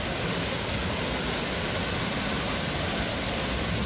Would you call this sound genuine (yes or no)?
yes